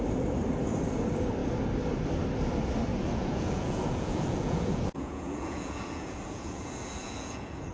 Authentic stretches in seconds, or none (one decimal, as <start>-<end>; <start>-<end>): 0.0-2.9